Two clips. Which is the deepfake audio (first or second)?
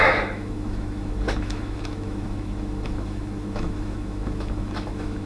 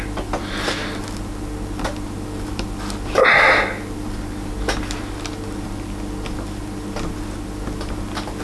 first